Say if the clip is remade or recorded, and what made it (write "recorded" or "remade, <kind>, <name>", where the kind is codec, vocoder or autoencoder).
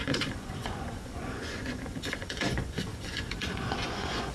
remade, vocoder, Vocos